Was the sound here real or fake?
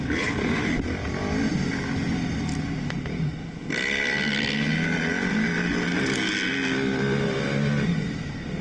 real